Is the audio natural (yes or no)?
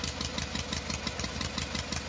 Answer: yes